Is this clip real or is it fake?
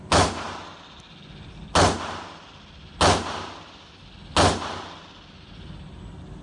real